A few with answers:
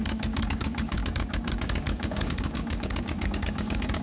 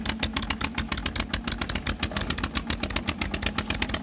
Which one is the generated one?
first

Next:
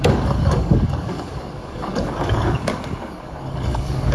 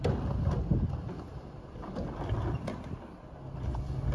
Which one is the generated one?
first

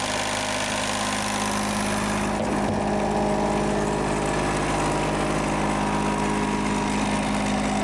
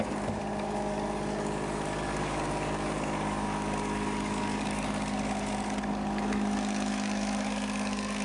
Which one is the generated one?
second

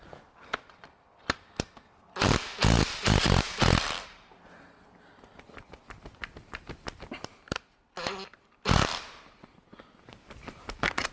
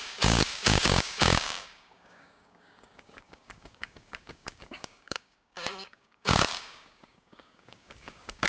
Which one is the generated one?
second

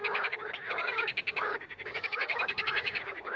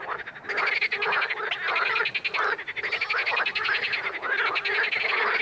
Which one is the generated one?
first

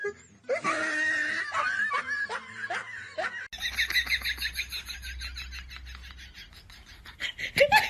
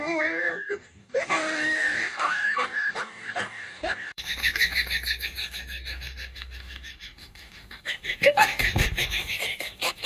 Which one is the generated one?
second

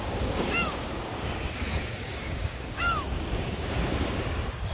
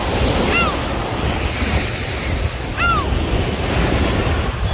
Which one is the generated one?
first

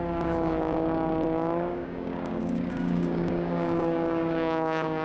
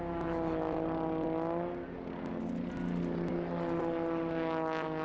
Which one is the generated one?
first